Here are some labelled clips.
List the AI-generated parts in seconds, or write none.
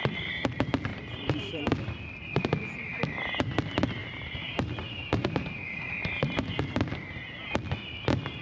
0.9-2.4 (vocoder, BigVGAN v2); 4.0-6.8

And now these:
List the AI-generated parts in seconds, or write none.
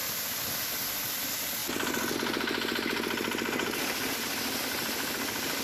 1.1-1.6 (vocoder, BigVGAN v2); 4.6-5.6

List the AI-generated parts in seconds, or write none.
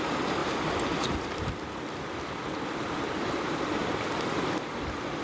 none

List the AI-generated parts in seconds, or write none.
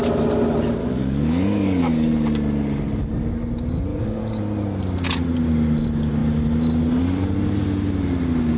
0.8-2.1 (codec, DAC); 3.9-4.4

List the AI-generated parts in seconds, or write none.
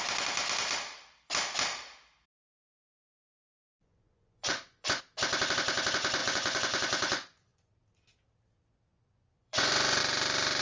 3.7-5.0 (vocoder, Vocos); 6.2-7.7; 8.9-10.0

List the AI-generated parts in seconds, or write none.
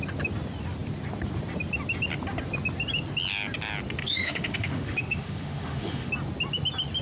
4.0-6.1 (autoencoder, DAC-VAE)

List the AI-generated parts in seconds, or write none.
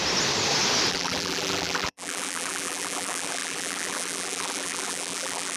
0.9-5.6 (vocoder, BigVGAN v2)